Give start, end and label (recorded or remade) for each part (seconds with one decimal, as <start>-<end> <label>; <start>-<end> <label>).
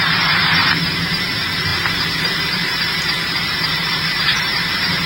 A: 0.0-1.7 remade; 1.7-2.2 recorded; 2.2-5.1 remade